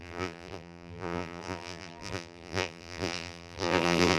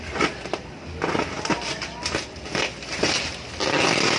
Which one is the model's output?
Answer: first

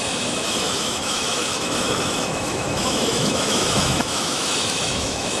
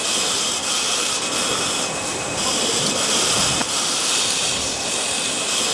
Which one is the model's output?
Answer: first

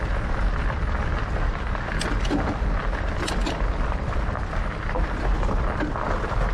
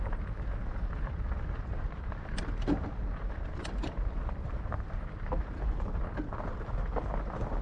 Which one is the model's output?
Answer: second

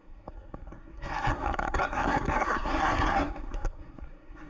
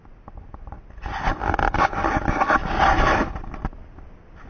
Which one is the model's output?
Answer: first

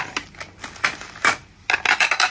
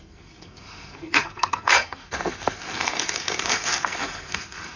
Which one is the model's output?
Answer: second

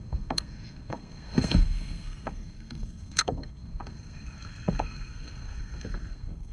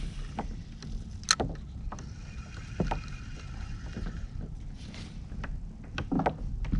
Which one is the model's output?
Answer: first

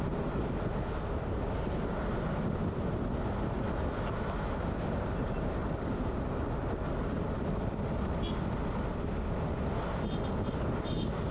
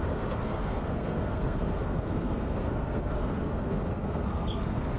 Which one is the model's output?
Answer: second